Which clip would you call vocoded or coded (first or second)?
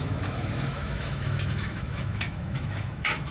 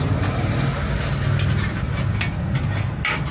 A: first